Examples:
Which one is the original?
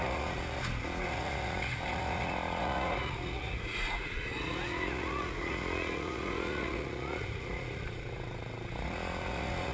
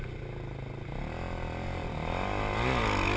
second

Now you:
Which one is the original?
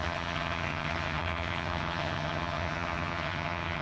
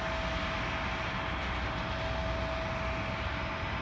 second